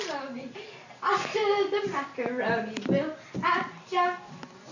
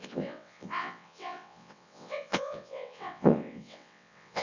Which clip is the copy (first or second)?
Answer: second